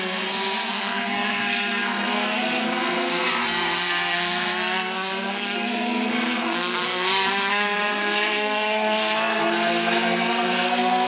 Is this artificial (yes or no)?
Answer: yes